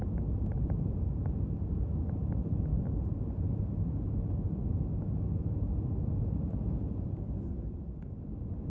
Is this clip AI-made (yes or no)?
no